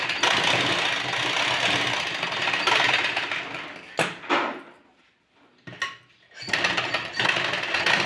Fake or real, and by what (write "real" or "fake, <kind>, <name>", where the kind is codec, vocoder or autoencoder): real